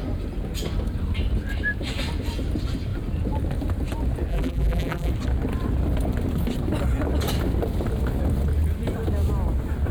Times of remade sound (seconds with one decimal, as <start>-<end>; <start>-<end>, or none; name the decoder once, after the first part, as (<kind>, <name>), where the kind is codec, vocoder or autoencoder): 4.3-5.1 (vocoder, BigVGAN v2)